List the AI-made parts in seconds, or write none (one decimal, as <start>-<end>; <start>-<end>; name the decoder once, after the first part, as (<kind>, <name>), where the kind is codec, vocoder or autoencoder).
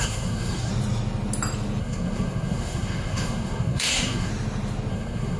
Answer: 0.0-0.7 (codec, SNAC); 1.8-4.3; 4.9-5.4